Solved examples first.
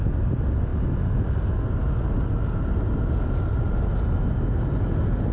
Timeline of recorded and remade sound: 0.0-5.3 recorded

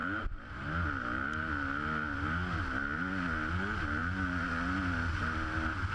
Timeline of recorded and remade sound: 0.0-5.9 recorded

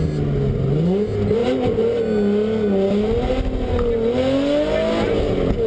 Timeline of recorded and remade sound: 0.0-1.4 recorded; 1.4-2.0 remade; 2.0-5.7 recorded